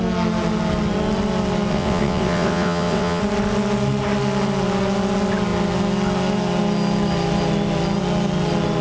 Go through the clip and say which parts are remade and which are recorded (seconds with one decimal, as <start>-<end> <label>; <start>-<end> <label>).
0.0-1.7 recorded; 1.7-3.2 remade; 3.2-8.8 recorded